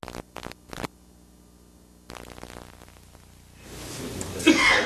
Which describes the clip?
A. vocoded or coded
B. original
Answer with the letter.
B